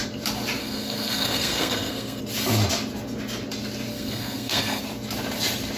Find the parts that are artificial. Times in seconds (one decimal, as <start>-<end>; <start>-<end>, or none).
0.6-2.2; 3.9-4.8